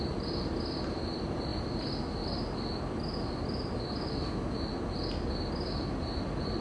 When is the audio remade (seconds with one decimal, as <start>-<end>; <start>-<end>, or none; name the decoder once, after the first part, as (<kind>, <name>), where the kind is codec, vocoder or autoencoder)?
0.0-1.5 (vocoder, BigVGAN v2); 5.5-6.6

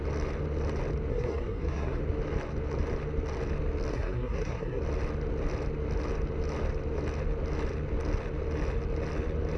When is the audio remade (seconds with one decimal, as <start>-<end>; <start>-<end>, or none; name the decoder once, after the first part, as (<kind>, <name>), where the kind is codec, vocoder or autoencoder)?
1.1-2.0 (codec, SNAC); 3.9-4.8

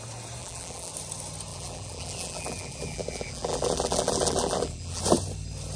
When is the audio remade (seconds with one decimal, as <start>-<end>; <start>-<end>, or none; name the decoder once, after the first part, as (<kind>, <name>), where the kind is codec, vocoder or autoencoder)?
0.4-0.9 (vocoder, BigVGAN v2); 1.5-5.0